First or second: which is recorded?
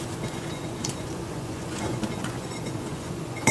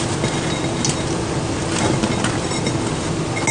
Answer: second